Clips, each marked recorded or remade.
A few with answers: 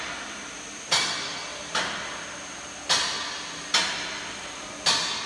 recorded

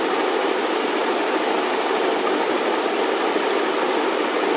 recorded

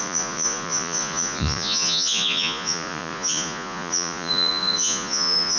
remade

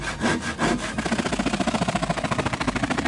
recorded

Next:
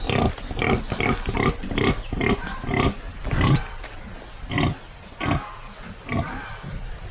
recorded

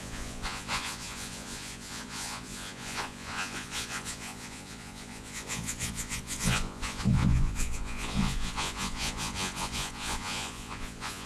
remade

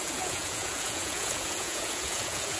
remade